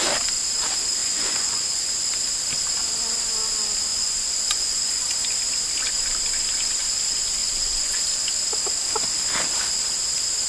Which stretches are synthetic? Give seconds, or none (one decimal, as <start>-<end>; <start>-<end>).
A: 1.0-2.1; 3.9-5.0; 7.4-8.1